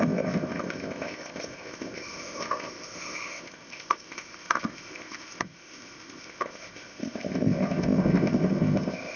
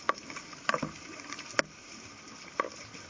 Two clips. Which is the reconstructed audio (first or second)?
first